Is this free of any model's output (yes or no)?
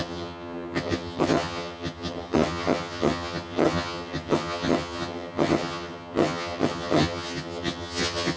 no